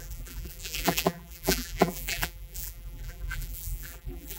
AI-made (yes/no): yes